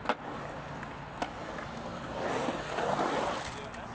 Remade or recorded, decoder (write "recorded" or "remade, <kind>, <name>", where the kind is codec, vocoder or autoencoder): recorded